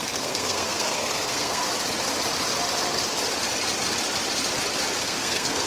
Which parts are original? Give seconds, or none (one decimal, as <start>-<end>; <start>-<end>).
1.6-5.0